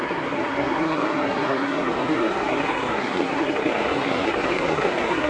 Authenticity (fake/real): fake